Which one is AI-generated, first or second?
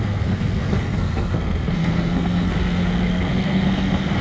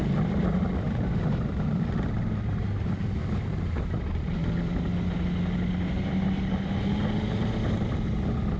first